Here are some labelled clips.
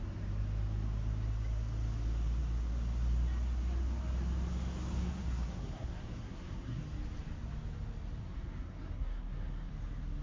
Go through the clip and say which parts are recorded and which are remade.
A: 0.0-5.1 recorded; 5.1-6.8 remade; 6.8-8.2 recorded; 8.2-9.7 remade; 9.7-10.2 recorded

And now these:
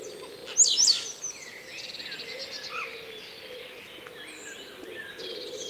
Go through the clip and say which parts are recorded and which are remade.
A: 0.0-5.7 recorded

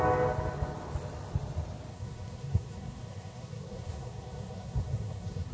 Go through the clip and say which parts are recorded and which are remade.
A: 0.0-1.9 recorded; 1.9-5.5 remade